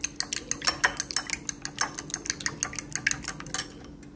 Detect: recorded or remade recorded